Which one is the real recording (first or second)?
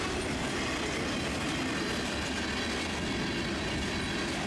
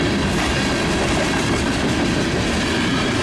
first